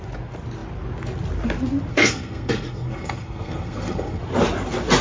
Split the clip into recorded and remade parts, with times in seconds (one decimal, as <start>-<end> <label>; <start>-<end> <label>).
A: 0.0-1.9 recorded; 1.9-4.2 remade; 4.2-5.0 recorded